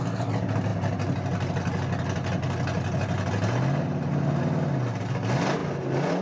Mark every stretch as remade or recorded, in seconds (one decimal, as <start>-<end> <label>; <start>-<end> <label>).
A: 0.0-6.2 recorded